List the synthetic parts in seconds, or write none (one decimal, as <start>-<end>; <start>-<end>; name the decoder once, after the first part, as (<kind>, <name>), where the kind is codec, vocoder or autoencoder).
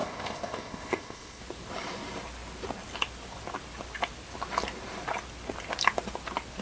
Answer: 0.0-1.4 (codec, ZipCodec)